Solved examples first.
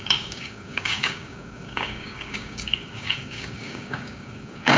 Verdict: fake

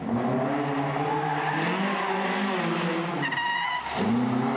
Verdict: real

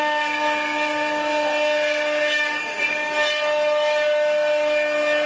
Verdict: real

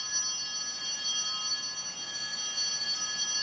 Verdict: real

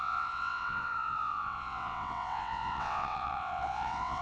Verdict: fake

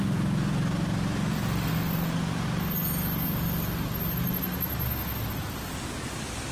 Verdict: real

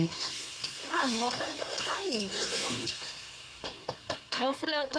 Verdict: fake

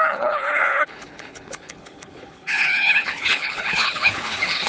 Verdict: fake